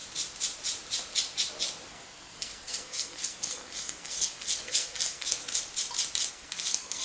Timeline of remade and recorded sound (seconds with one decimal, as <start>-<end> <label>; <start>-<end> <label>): 0.0-1.9 recorded; 1.9-5.4 remade; 5.4-6.3 recorded; 6.3-7.0 remade